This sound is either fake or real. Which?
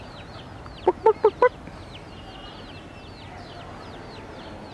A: real